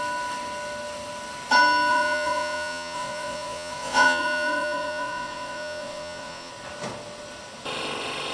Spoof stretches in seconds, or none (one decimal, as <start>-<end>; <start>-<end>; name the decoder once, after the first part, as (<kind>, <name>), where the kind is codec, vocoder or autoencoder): 1.9-6.5 (vocoder, Vocos)